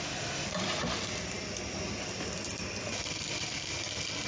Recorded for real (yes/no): yes